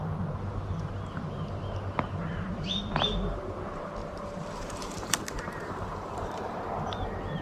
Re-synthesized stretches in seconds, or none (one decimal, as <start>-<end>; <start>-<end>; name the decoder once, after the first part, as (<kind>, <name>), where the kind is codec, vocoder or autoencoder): 4.0-6.5 (vocoder, BigVGAN v2)